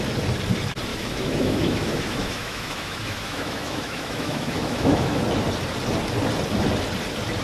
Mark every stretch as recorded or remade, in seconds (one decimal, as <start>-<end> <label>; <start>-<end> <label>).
0.0-0.9 recorded; 0.9-5.2 remade; 5.2-7.4 recorded